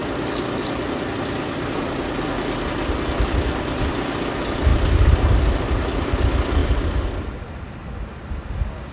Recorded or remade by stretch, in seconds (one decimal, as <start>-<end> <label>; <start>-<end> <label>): 0.0-8.9 recorded